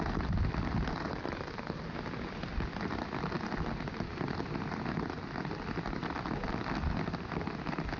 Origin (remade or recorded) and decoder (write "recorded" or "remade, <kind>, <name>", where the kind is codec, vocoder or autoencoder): recorded